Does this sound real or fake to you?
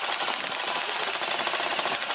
real